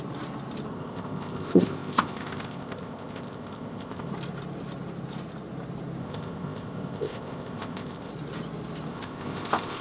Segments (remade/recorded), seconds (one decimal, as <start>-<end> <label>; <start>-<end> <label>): 0.0-0.7 recorded; 0.7-4.1 remade; 4.1-6.0 recorded; 6.0-8.1 remade; 8.1-8.9 recorded; 8.9-9.8 remade